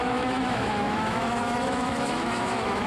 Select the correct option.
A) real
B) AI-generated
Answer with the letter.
B